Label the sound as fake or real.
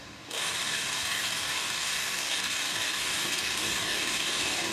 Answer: fake